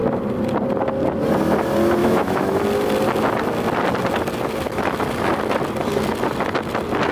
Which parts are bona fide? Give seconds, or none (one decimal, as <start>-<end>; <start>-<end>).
0.0-2.0; 2.6-7.1